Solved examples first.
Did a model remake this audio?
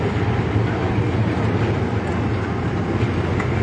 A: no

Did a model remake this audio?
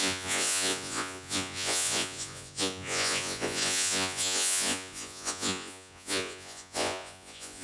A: yes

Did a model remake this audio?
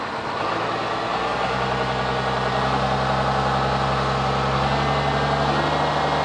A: no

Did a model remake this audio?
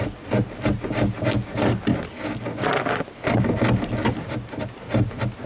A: no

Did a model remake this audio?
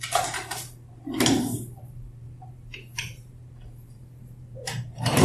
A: yes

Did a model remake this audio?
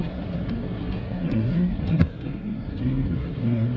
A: yes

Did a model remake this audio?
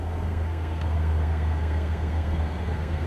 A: yes